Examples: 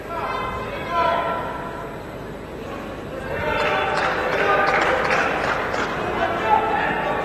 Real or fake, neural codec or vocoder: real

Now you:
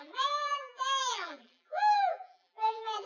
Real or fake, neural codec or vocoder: fake, vocoder, BigVGAN v2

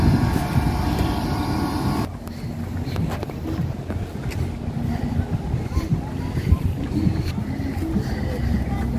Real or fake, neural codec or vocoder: real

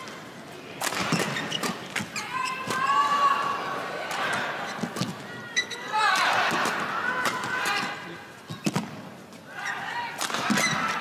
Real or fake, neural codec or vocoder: real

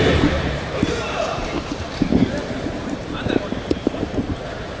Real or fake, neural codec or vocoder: fake, vocoder, BigVGAN v2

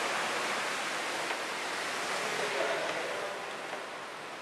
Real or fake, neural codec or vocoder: real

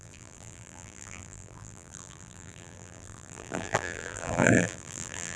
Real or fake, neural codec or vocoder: fake, vocoder, BigVGAN v2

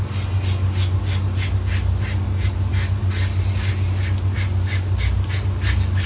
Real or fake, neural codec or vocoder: real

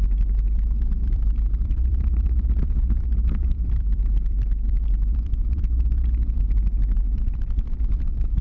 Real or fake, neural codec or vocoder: fake, vocoder, BigVGAN v2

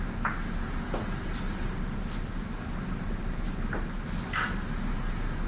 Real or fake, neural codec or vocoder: real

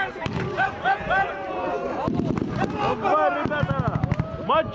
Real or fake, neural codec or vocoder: real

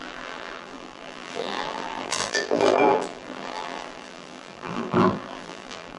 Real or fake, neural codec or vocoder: fake, vocoder, BigVGAN v2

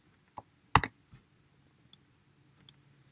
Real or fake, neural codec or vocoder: real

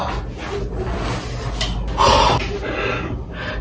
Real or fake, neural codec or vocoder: real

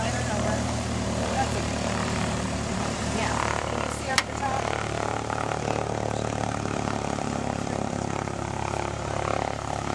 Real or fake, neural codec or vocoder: fake, vocoder, BigVGAN v2